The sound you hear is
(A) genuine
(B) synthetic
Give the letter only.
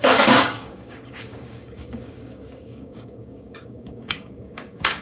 B